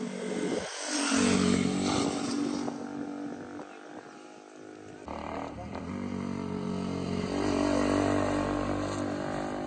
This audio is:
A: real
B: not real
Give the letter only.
A